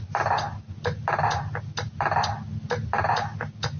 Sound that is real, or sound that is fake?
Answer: real